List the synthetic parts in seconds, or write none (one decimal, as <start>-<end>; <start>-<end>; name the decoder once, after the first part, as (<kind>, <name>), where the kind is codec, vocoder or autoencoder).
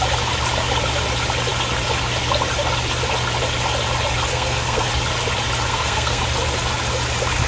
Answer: 4.3-4.9 (codec, SNAC); 5.7-6.2